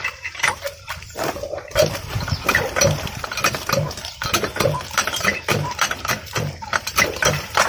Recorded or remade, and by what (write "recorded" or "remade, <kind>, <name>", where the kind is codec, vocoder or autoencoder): remade, vocoder, BigVGAN v2